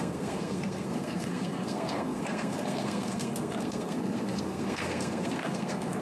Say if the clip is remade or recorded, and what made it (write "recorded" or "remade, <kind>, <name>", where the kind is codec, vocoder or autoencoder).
remade, codec, SNAC